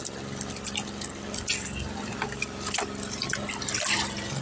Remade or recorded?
recorded